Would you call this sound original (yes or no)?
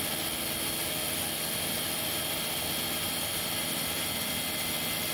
yes